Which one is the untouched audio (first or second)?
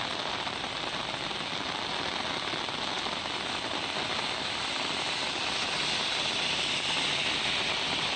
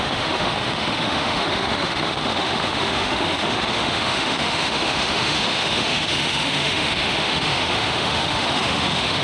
first